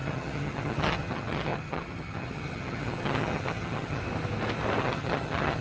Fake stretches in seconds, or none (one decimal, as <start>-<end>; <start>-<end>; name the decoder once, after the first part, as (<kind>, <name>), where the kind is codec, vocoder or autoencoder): 0.0-4.0 (vocoder, HiFi-GAN); 4.8-5.6

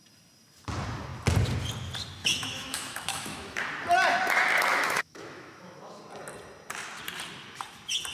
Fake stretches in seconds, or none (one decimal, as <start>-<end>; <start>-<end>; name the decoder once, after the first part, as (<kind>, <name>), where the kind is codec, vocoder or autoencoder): 2.2-3.6 (autoencoder, DAC-VAE); 4.7-6.0

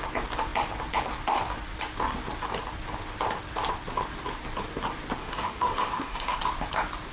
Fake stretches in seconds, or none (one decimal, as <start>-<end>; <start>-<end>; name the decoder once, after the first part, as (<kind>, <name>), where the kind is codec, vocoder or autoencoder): 5.2-6.4 (autoencoder, DAC-VAE)